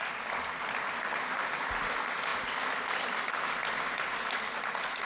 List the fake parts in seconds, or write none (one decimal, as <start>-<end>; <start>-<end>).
none